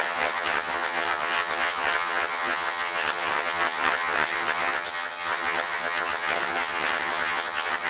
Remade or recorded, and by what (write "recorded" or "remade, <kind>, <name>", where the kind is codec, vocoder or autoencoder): remade, vocoder, HiFi-GAN